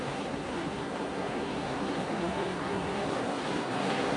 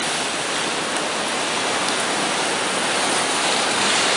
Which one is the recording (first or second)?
second